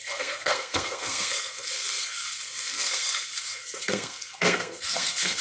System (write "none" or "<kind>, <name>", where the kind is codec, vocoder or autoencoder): codec, SNAC